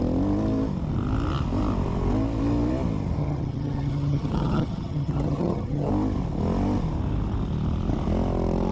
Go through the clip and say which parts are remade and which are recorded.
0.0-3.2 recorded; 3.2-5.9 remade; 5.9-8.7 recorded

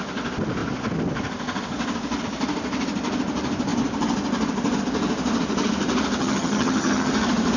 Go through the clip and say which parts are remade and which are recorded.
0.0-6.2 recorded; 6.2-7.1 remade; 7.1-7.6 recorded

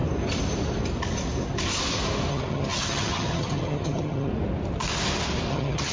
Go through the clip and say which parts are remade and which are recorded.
0.0-2.3 recorded; 2.3-4.3 remade; 4.3-5.5 recorded; 5.5-5.9 remade

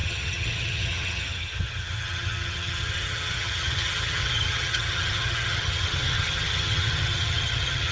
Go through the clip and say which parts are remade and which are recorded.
0.0-7.9 remade